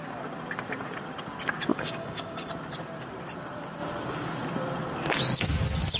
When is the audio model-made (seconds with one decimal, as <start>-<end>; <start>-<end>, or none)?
1.7-2.5